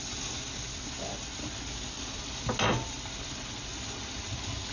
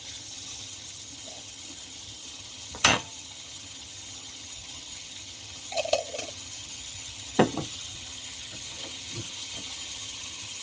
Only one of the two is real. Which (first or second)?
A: first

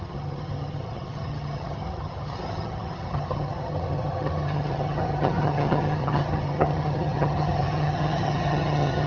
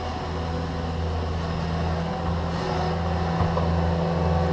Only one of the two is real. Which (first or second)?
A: second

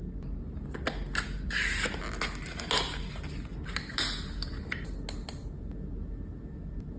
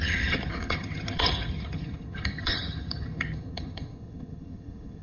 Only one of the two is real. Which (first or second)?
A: first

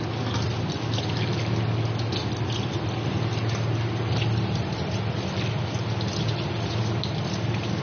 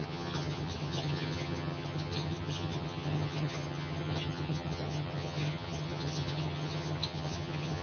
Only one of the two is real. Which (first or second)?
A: first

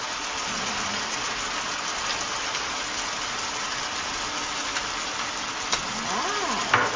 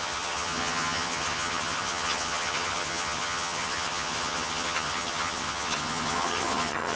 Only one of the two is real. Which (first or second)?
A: first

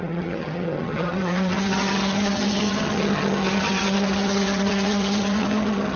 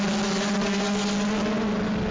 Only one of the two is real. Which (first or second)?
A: second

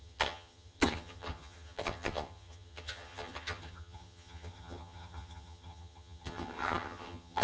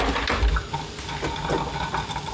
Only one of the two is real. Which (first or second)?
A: second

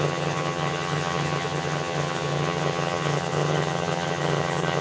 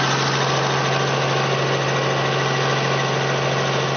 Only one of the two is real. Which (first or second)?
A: second